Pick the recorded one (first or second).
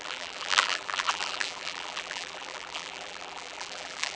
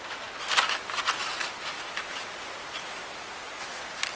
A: second